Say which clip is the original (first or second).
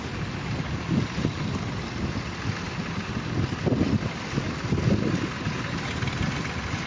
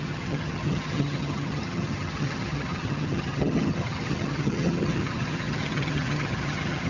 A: first